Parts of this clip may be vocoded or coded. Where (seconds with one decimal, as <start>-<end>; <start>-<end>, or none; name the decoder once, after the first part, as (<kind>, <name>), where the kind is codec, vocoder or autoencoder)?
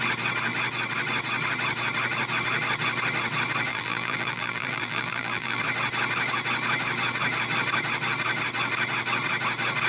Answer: 3.7-5.6 (vocoder, BigVGAN v2)